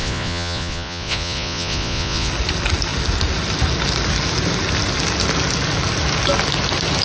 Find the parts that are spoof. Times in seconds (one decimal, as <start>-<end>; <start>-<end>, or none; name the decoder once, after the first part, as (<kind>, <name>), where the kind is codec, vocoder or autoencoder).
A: 0.0-2.3 (vocoder, Vocos)